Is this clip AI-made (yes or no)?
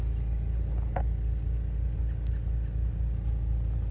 no